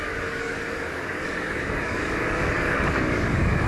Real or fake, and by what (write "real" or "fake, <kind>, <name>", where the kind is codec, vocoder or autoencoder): fake, codec, DAC